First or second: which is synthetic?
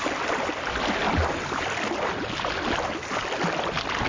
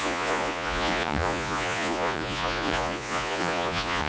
second